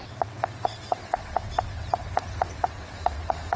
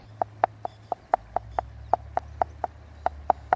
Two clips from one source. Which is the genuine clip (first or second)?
second